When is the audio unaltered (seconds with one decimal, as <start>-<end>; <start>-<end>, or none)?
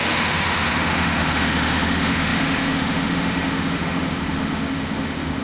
none